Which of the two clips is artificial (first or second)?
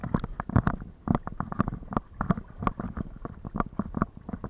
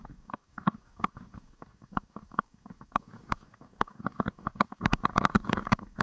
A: second